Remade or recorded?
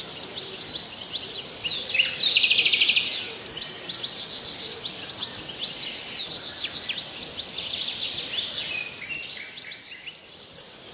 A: recorded